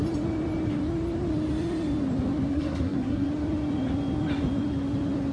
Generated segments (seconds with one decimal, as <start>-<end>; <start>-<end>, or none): 2.5-3.3